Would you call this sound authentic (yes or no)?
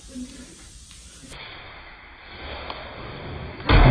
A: yes